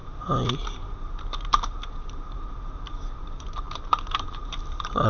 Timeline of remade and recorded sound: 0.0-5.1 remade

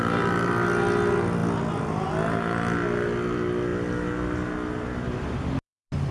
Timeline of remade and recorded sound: 0.0-6.1 recorded

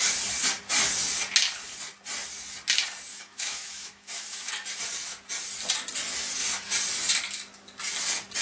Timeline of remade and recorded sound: 0.0-3.1 recorded; 3.1-4.5 remade; 4.5-8.4 recorded

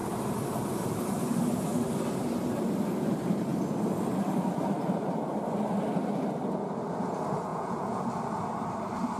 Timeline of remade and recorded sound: 0.0-7.5 recorded; 7.5-8.1 remade; 8.1-9.2 recorded

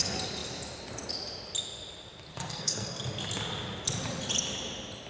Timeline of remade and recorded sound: 0.0-2.3 recorded; 2.3-3.0 remade; 3.0-5.1 recorded

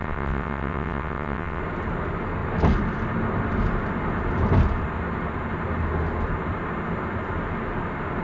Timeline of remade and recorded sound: 0.0-1.6 remade; 1.6-8.2 recorded

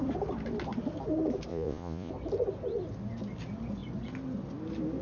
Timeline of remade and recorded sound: 0.0-1.5 recorded; 1.5-2.1 remade; 2.1-5.0 recorded